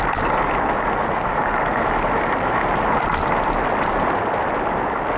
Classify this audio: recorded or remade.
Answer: recorded